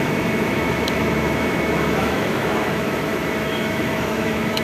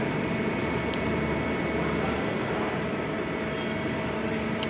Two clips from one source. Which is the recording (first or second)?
second